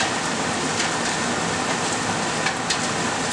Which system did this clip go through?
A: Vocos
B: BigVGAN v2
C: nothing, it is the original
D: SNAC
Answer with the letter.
C